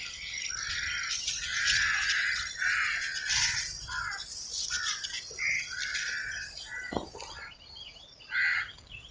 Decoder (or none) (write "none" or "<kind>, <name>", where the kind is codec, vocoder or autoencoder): none